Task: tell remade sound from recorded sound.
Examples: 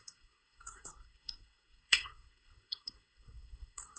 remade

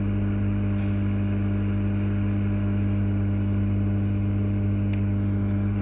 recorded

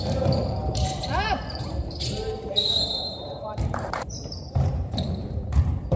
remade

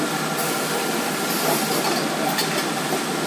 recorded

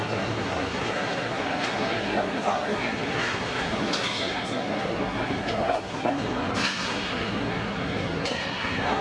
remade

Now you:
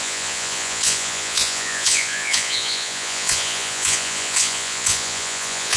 remade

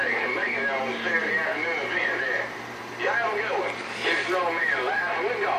recorded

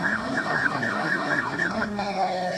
remade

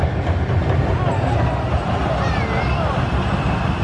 recorded